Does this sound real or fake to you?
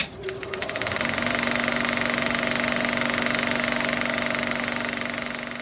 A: real